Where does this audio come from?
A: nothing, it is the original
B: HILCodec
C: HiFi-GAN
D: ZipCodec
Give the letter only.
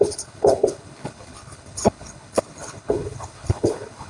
B